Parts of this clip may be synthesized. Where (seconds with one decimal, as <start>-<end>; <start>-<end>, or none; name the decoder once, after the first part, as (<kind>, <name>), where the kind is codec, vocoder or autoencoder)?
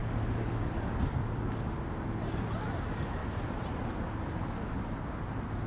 0.0-0.6 (vocoder, BigVGAN v2); 3.2-4.1